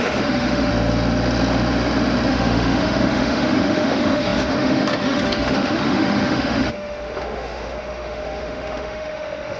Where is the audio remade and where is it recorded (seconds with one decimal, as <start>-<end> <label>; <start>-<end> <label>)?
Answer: 0.0-0.7 remade; 0.7-2.3 recorded; 2.3-9.6 remade